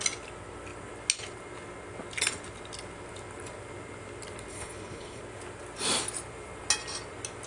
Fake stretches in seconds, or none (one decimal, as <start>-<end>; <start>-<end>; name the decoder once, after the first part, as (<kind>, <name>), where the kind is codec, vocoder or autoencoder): 4.5-5.2 (codec, HILCodec)

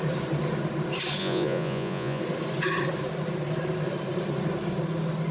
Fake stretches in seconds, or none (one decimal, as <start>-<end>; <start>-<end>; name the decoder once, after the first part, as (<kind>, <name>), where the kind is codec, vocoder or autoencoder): 1.2-2.2 (vocoder, Vocos)